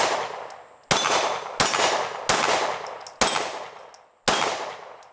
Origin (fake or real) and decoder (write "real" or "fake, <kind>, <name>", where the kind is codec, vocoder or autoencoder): real